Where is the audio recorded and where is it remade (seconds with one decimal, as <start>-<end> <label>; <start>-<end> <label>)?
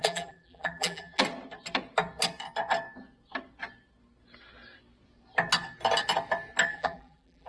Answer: 0.0-1.2 remade; 1.2-6.7 recorded; 6.7-7.5 remade